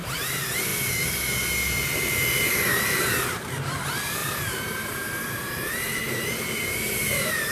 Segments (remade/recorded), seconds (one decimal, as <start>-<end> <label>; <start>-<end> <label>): 0.0-0.7 remade; 0.7-2.5 recorded; 2.5-7.5 remade